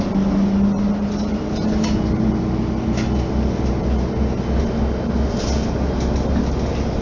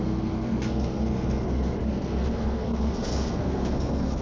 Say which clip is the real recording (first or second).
first